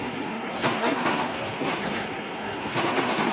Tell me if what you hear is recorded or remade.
remade